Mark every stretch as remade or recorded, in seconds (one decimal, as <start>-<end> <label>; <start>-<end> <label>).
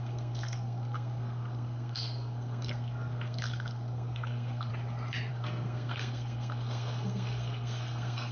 0.0-4.7 remade; 4.7-5.3 recorded; 5.3-8.3 remade